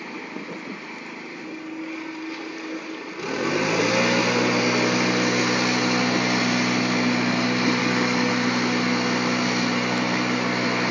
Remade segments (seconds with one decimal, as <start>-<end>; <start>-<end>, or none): 7.8-8.3